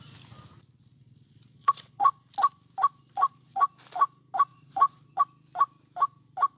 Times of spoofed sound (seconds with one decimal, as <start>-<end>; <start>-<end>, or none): 0.8-2.2; 2.9-3.7; 4.5-5.2